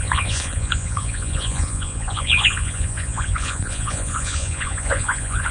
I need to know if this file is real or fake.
fake